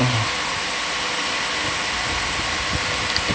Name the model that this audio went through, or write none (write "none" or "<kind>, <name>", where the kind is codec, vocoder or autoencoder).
none